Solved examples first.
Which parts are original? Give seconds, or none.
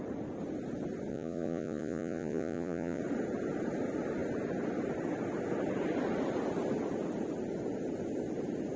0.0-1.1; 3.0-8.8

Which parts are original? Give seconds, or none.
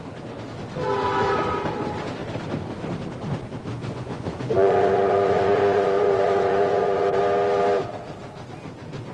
0.0-3.7; 7.2-9.1